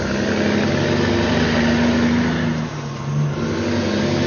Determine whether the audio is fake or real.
real